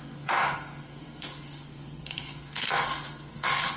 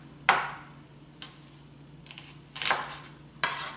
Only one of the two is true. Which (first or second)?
second